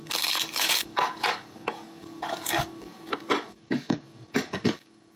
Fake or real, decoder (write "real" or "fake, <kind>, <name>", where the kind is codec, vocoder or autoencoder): fake, codec, DAC